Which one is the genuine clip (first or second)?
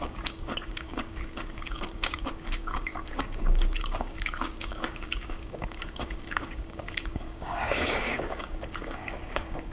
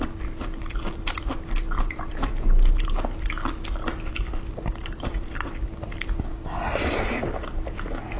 second